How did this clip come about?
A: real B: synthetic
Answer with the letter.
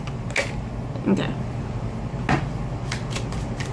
A